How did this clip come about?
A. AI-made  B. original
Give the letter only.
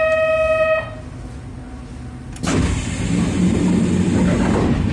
B